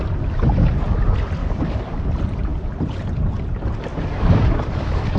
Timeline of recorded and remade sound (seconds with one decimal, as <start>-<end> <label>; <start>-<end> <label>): 0.0-1.4 recorded; 1.4-2.1 remade; 2.1-3.9 recorded; 3.9-5.2 remade